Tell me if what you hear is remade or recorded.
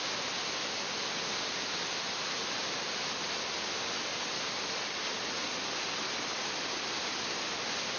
recorded